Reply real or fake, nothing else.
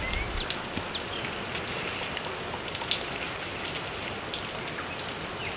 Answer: real